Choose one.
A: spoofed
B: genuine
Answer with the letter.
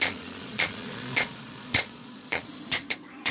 A